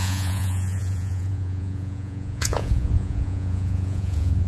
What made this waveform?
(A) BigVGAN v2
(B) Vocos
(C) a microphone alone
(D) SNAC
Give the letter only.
B